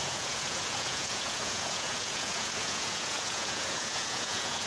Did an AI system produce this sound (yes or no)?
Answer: yes